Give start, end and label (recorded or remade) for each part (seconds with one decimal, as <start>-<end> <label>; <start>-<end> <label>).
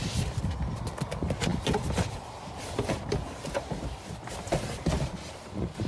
0.0-5.9 remade